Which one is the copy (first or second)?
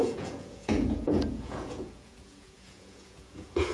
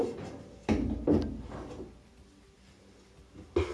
first